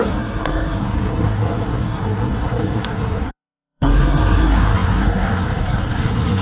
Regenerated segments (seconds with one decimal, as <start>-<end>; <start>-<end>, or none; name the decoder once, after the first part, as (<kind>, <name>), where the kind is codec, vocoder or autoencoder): 0.0-6.4 (codec, SNAC)